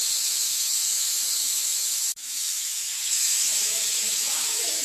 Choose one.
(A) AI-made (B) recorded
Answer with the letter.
A